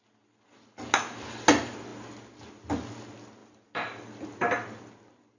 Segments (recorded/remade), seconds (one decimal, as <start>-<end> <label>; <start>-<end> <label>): 0.0-3.4 recorded; 3.4-4.9 remade; 4.9-5.4 recorded